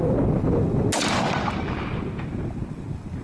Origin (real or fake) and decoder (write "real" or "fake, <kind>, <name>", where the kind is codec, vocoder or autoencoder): real